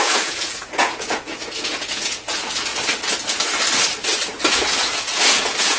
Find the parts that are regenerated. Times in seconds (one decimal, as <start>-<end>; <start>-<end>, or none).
0.0-2.7; 4.5-5.8